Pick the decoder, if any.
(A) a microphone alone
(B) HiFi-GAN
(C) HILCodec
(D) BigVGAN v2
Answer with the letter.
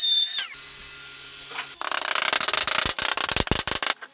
A